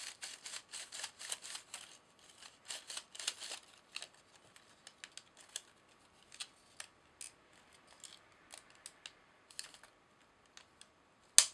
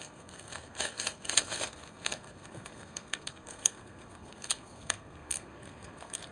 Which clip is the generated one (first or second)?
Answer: second